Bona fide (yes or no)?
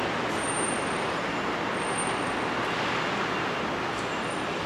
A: yes